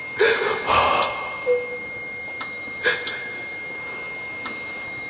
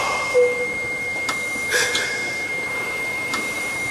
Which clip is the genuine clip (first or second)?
first